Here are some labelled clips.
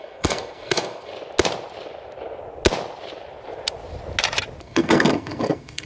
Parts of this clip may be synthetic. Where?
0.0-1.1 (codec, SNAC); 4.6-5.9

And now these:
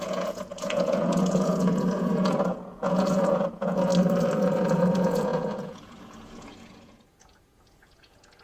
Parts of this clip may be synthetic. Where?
0.0-3.9 (vocoder, Vocos); 4.4-8.4